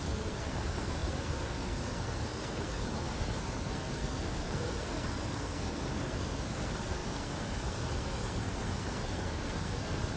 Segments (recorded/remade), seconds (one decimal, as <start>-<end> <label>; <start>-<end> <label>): 0.0-10.2 remade